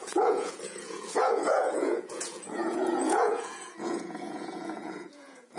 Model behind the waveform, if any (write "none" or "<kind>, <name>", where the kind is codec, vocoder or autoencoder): vocoder, Vocos